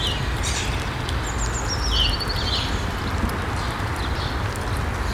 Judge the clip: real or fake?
real